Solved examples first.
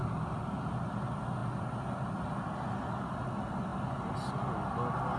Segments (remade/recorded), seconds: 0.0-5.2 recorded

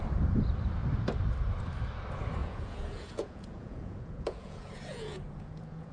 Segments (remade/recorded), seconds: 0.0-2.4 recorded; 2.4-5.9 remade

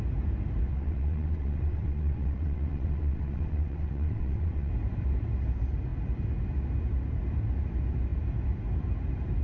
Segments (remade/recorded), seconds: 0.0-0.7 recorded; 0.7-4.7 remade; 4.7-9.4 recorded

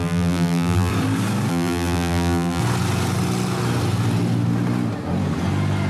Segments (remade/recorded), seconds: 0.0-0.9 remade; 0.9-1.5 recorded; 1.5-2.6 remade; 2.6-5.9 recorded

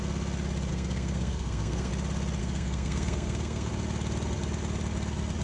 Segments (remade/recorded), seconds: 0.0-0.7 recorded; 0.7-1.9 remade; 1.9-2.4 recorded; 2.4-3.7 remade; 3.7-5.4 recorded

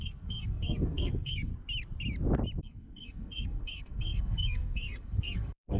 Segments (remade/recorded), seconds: 0.0-1.5 remade; 1.5-2.6 recorded; 2.6-5.8 remade

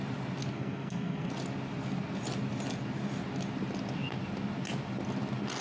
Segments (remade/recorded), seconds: 0.0-0.5 recorded; 0.5-1.3 remade; 1.3-5.6 recorded